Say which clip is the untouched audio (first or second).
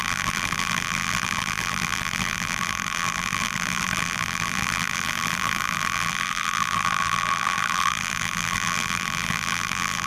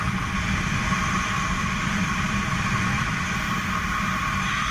second